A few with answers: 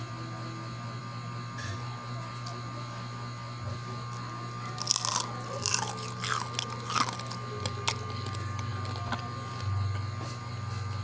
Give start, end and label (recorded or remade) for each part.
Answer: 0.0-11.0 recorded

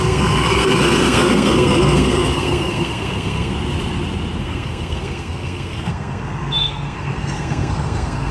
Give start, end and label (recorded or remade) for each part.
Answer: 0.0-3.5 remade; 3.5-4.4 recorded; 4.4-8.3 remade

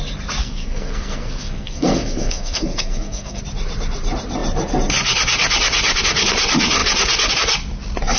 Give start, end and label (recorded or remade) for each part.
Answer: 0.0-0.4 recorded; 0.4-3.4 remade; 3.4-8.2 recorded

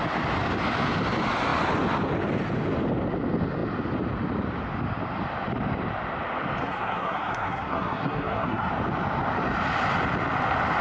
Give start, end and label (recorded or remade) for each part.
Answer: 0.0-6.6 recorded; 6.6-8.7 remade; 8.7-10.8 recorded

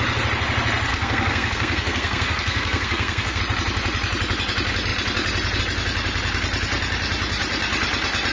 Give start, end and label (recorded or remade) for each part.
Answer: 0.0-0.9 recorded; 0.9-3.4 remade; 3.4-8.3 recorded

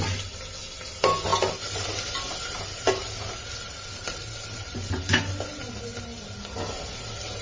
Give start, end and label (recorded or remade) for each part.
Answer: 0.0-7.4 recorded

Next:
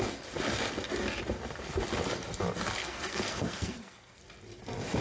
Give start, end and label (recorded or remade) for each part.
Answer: 0.0-2.8 recorded; 2.8-4.2 remade; 4.2-5.0 recorded

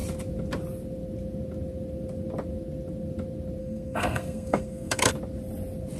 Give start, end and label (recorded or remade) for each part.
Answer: 0.0-3.6 recorded; 3.6-5.1 remade; 5.1-6.0 recorded